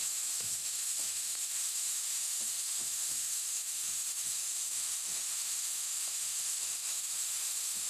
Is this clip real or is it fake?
fake